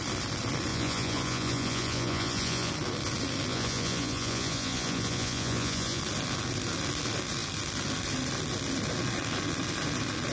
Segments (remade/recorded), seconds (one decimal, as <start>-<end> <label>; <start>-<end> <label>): 0.0-0.7 recorded; 0.7-2.7 remade; 2.7-3.5 recorded; 3.5-6.0 remade; 6.0-10.3 recorded

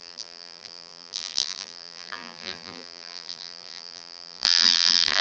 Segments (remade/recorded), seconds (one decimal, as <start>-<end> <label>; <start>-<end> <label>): 0.0-5.2 remade